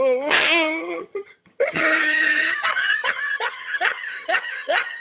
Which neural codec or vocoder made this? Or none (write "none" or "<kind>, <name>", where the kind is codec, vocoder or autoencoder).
vocoder, HiFi-GAN